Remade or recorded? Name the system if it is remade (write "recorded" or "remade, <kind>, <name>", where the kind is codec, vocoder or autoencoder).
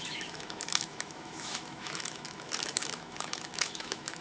remade, autoencoder, DAC-VAE